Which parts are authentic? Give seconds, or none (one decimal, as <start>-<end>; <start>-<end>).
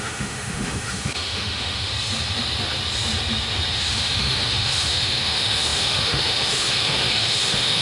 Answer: 1.9-3.7